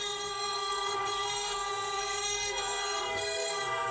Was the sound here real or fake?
fake